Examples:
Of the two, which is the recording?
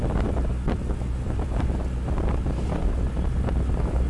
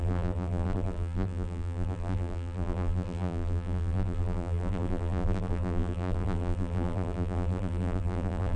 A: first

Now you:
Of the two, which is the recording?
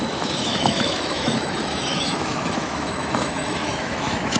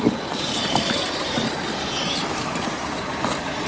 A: second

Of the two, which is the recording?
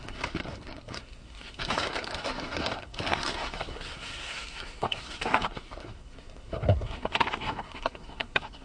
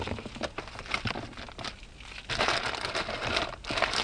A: second